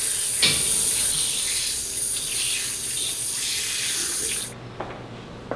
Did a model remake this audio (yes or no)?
no